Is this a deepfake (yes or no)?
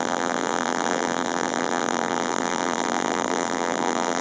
yes